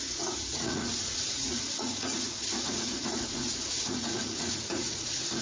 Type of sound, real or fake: fake